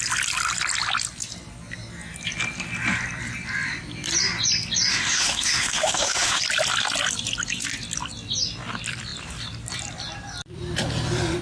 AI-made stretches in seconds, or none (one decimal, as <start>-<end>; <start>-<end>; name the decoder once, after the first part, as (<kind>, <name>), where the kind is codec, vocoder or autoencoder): 4.9-6.4 (autoencoder, DAC-VAE)

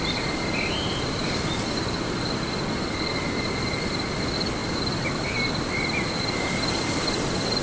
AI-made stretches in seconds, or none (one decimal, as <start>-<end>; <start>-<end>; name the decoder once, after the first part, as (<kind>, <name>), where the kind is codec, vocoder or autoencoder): none

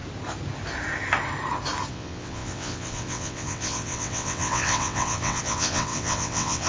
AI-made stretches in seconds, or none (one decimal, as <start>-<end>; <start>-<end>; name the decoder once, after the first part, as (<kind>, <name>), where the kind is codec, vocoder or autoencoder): 1.9-6.7 (vocoder, WaveNeXt)